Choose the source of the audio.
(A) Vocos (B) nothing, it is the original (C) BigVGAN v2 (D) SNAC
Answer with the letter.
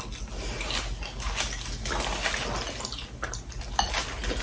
B